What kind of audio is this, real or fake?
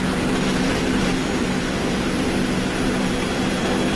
fake